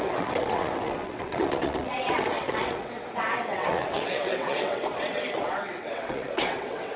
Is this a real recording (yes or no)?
no